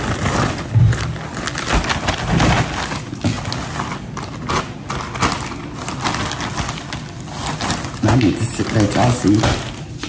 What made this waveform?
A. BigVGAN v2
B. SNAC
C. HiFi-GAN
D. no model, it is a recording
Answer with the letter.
D